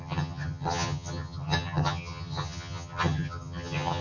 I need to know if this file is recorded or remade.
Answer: remade